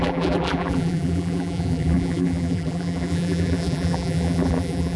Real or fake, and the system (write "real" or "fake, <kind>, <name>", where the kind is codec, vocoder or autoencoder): fake, vocoder, BigVGAN v2